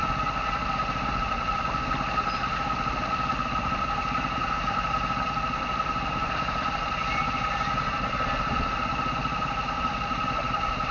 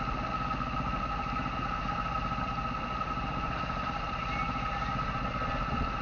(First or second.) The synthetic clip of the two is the first